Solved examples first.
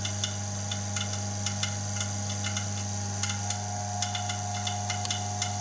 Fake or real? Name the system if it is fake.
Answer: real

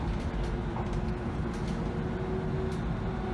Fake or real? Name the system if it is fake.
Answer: real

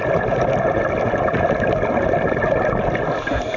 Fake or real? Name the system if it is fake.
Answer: real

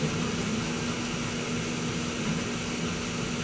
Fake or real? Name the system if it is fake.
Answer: real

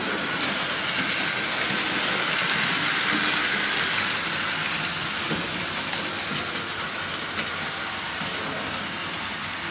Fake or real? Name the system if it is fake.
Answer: real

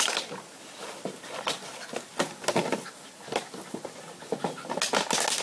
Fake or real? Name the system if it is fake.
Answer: real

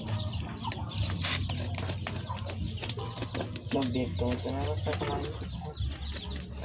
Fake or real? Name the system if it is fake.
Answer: real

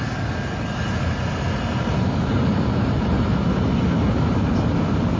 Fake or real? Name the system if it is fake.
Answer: real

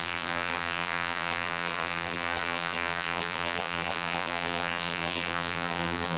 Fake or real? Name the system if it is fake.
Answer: fake, vocoder, BigVGAN v2